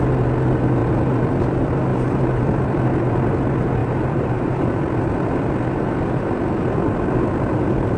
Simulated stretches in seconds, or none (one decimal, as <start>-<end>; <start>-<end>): 1.9-2.4; 3.8-4.8